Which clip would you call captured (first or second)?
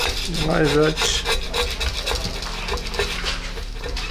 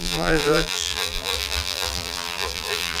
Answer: first